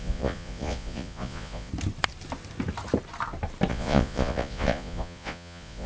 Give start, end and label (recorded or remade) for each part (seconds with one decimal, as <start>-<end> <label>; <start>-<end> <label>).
0.0-1.7 remade; 1.7-3.7 recorded; 3.7-5.9 remade